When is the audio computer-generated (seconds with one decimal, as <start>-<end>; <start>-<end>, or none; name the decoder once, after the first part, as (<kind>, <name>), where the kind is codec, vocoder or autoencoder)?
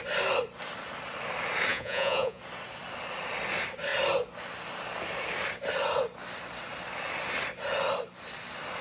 1.7-2.4 (vocoder, Vocos)